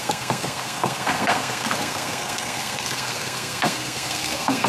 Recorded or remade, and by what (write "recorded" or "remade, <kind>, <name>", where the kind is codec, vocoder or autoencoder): remade, codec, SNAC